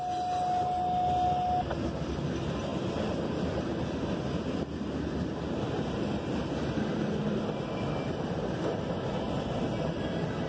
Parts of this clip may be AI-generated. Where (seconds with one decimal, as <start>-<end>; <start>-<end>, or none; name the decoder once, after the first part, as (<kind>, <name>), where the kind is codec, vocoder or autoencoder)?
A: none